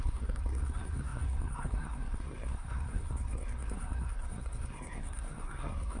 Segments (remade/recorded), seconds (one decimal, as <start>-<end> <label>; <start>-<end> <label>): 0.0-6.0 remade